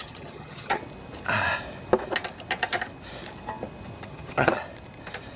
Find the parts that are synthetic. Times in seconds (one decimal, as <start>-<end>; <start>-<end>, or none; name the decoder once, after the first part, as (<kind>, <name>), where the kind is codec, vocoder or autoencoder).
0.0-0.8 (vocoder, HiFi-GAN); 4.0-4.7